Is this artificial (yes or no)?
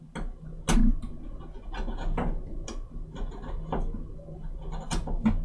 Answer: no